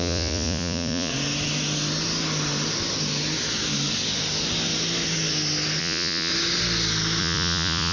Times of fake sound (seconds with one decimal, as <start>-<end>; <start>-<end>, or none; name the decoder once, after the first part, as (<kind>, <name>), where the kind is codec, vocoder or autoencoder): 0.0-1.1 (vocoder, Vocos); 5.8-6.3; 7.2-7.9